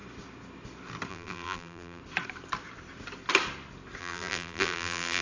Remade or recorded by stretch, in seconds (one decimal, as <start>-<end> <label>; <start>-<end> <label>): 0.0-1.1 recorded; 1.1-2.0 remade; 2.0-4.0 recorded; 4.0-5.2 remade